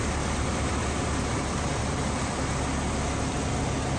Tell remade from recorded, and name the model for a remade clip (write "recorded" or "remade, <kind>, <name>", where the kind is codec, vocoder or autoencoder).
recorded